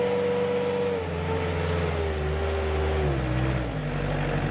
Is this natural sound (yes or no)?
yes